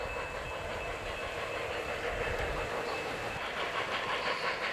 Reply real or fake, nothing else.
real